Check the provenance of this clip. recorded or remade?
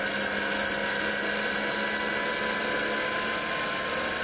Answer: recorded